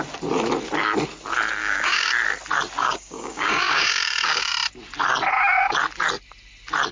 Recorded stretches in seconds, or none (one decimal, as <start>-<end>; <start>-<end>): 0.0-1.6; 2.1-2.8; 4.5-6.9